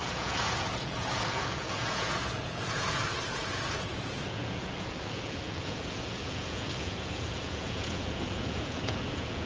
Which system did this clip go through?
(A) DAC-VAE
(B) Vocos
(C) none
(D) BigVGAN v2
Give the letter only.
B